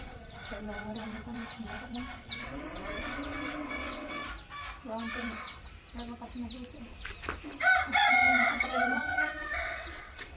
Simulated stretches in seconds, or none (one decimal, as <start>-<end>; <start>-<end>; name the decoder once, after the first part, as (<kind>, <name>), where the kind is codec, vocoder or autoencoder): 0.0-4.2 (vocoder, WaveNeXt); 5.1-5.7; 8.1-10.4